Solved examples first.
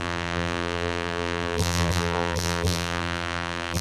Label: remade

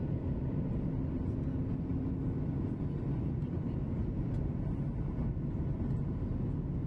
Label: recorded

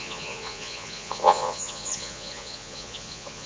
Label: remade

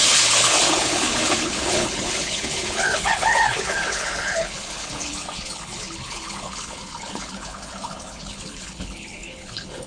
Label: remade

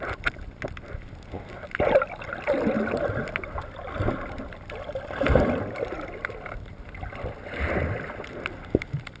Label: recorded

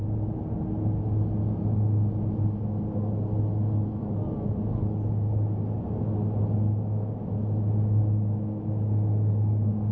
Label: recorded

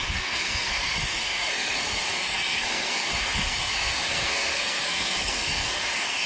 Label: remade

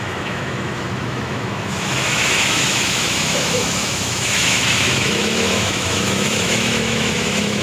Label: remade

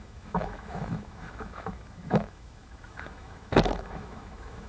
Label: remade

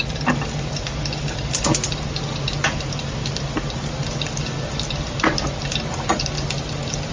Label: recorded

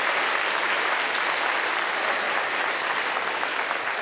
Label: recorded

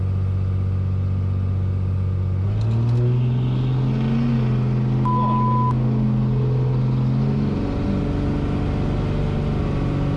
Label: recorded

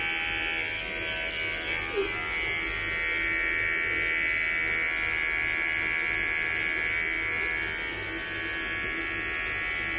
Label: recorded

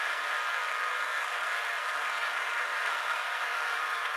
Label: remade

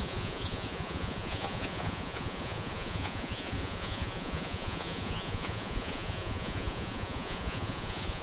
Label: remade